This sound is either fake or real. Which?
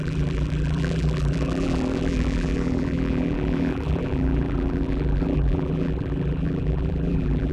fake